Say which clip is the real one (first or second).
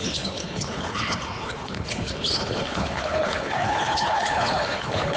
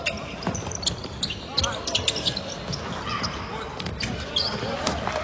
second